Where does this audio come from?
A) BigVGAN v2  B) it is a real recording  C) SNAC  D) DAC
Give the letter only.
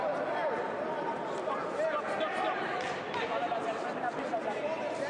A